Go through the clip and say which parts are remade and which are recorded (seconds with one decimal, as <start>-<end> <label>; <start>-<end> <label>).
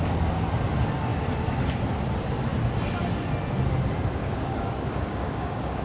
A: 0.0-4.2 recorded; 4.2-5.8 remade